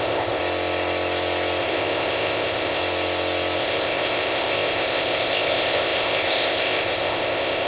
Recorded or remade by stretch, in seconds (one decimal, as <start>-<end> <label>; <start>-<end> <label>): 0.0-0.4 remade; 0.4-1.6 recorded; 1.6-2.8 remade; 2.8-3.6 recorded; 3.6-7.7 remade